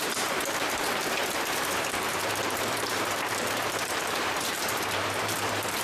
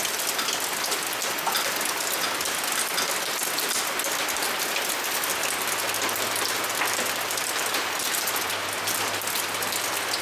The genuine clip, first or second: second